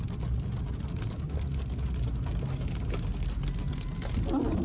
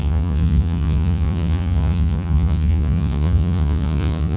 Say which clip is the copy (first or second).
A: second